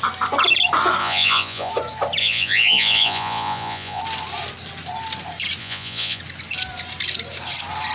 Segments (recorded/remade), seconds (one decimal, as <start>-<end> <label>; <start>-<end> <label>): 0.0-1.0 recorded; 1.0-1.7 remade; 1.7-2.2 recorded; 2.2-4.0 remade; 4.0-5.6 recorded; 5.6-6.2 remade; 6.2-7.9 recorded